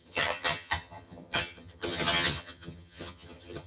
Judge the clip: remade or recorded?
remade